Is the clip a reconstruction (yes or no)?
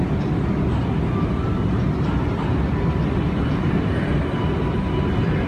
no